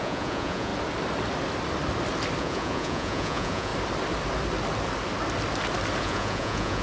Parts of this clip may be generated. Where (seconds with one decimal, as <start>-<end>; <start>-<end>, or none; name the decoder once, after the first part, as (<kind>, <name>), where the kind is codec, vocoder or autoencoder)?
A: 0.0-0.7 (vocoder, Vocos); 2.4-3.7; 6.0-6.8